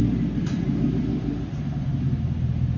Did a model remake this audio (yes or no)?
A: no